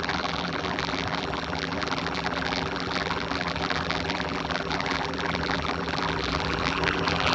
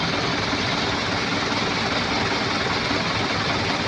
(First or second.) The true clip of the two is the second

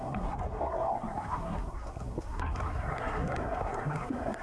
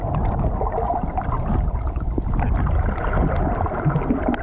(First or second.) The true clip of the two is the second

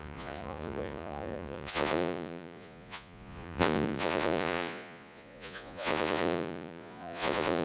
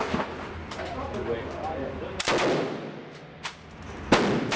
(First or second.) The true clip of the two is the second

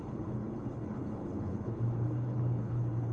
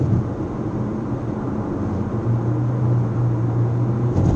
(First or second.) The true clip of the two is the second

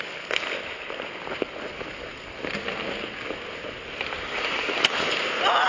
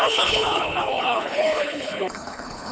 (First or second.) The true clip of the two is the first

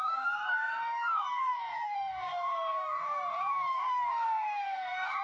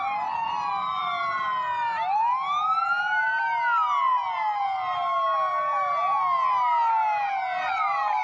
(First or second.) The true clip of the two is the second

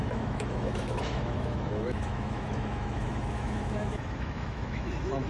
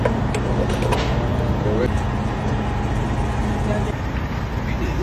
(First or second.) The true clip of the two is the second